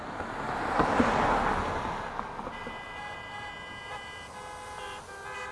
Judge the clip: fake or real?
real